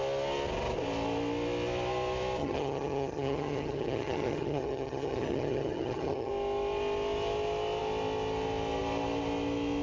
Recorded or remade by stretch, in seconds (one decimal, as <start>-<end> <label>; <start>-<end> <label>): 0.0-2.4 recorded; 2.4-6.3 remade; 6.3-9.8 recorded